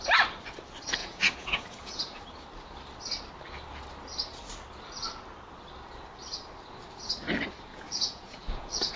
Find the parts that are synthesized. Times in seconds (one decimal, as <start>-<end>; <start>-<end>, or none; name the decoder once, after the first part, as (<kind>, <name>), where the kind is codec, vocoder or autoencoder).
1.0-2.2 (vocoder, Vocos); 7.7-9.0